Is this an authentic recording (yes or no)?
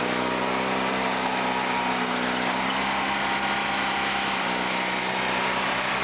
yes